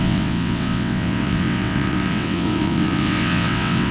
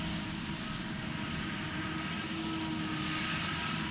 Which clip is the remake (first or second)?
first